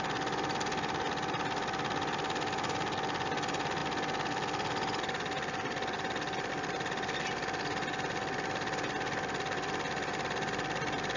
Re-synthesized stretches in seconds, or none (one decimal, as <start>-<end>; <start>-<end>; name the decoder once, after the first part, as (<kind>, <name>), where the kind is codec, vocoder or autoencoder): none